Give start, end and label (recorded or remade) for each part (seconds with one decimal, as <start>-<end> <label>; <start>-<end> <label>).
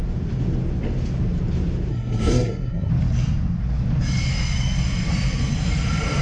0.0-1.9 recorded; 1.9-2.9 remade; 2.9-6.2 recorded